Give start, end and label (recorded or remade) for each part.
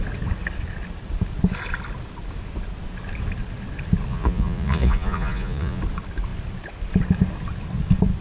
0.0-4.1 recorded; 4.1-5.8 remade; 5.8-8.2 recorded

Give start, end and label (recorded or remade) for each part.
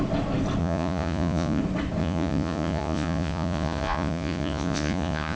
0.0-0.6 recorded; 0.6-1.6 remade; 1.6-2.0 recorded; 2.0-5.4 remade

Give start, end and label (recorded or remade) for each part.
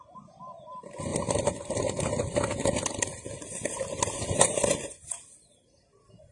0.0-6.3 recorded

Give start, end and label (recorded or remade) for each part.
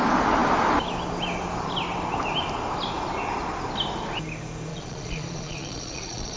0.0-4.7 recorded; 4.7-6.4 remade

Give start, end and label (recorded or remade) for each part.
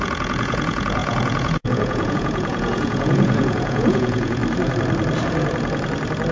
0.0-4.4 remade; 4.4-6.3 recorded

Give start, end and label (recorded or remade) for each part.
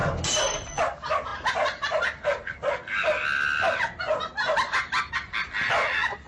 0.0-6.3 recorded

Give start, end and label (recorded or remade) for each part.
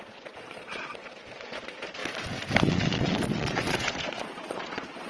0.0-2.0 remade; 2.0-2.7 recorded; 2.7-5.1 remade